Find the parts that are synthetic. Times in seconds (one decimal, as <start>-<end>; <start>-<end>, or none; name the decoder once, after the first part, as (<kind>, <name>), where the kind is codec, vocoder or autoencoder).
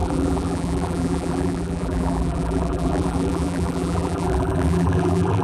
0.0-5.4 (vocoder, BigVGAN v2)